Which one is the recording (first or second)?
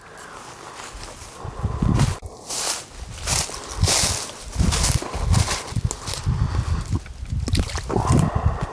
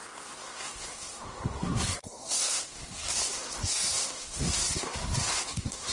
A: first